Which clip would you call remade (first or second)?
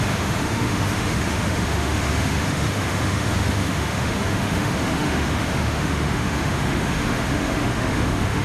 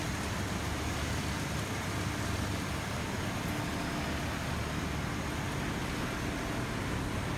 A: first